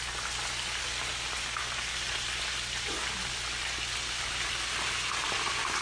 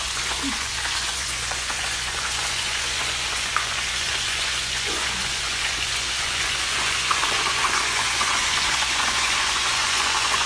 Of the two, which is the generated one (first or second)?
second